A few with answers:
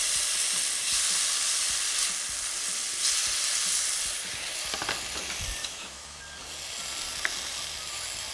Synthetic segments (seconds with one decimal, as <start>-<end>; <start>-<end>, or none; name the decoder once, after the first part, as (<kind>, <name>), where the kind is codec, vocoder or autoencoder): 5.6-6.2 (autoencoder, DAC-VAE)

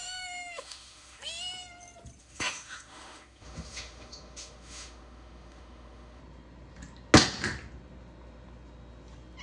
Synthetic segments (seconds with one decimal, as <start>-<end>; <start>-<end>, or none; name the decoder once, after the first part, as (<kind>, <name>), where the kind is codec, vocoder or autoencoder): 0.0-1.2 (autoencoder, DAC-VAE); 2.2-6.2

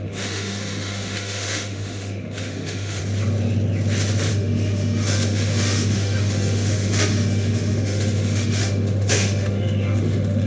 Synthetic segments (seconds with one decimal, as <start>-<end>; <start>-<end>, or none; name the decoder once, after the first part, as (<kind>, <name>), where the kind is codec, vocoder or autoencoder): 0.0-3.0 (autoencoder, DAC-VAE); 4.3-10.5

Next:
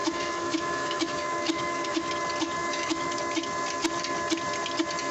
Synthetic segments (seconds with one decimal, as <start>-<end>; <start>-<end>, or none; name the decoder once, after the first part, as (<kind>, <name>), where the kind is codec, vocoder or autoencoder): 0.0-2.1 (autoencoder, DAC-VAE); 2.6-3.2

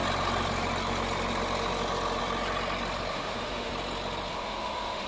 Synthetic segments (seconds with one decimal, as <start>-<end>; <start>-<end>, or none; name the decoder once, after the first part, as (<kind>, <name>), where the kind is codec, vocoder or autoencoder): 3.1-3.7 (autoencoder, DAC-VAE); 4.3-5.1

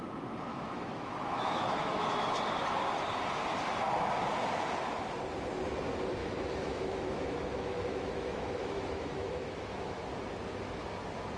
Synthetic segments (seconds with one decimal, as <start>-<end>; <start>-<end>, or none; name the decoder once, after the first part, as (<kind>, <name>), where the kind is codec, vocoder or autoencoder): 0.5-2.4 (autoencoder, DAC-VAE); 6.2-10.0